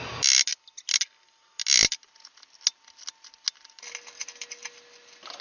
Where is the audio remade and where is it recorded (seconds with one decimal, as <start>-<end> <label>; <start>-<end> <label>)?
0.0-5.4 recorded

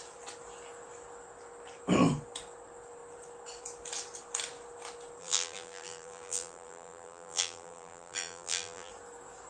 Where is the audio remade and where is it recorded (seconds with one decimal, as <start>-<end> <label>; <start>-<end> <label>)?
0.0-5.2 recorded; 5.2-8.9 remade; 8.9-9.5 recorded

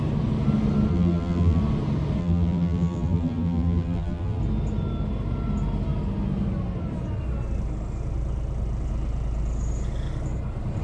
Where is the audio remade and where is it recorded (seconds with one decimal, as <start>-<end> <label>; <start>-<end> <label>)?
0.0-0.9 recorded; 0.9-1.6 remade; 1.6-2.2 recorded; 2.2-4.4 remade; 4.4-10.8 recorded